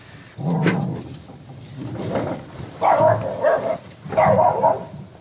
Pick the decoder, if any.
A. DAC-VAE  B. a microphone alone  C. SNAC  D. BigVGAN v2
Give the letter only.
B